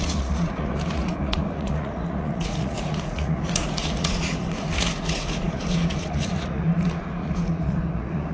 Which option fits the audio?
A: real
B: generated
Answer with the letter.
B